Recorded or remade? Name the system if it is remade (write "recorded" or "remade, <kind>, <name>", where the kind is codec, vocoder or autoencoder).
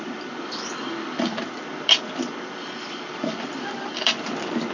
remade, vocoder, BigVGAN v2